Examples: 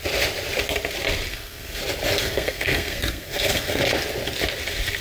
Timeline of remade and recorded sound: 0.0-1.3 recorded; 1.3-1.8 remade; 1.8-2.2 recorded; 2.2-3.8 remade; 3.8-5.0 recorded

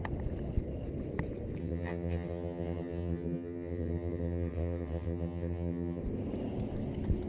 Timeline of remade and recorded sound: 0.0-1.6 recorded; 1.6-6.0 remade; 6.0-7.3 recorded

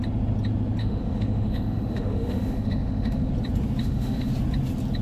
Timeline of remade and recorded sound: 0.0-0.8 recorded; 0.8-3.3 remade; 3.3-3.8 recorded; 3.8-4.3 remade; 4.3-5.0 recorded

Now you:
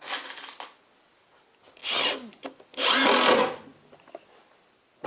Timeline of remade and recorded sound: 0.0-5.1 recorded

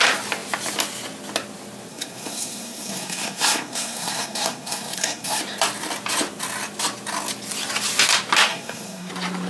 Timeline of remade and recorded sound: 0.0-1.9 recorded; 1.9-5.4 remade; 5.4-8.5 recorded; 8.5-9.1 remade; 9.1-9.5 recorded

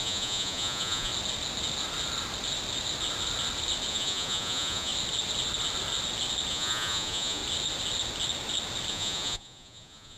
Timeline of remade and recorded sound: 0.0-1.1 remade; 1.1-3.9 recorded; 3.9-4.9 remade; 4.9-6.5 recorded; 6.5-7.4 remade; 7.4-8.9 recorded; 8.9-10.2 remade